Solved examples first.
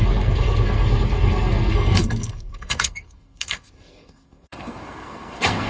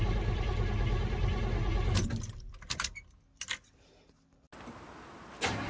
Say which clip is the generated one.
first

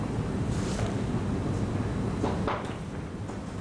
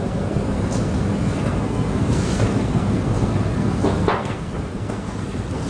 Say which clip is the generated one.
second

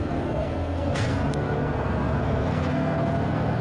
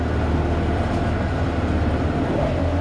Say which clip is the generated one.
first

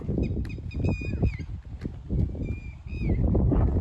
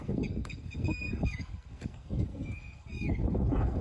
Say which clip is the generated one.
second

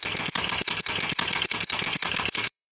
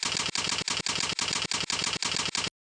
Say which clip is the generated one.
first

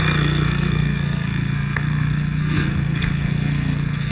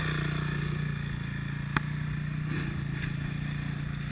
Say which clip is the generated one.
first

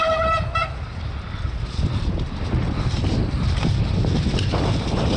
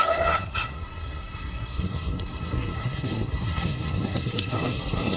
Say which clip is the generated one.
second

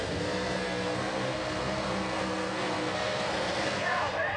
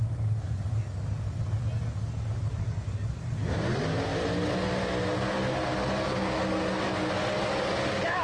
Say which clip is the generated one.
first